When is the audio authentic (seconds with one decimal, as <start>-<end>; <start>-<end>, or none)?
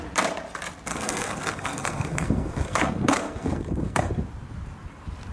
0.0-0.9; 4.1-5.3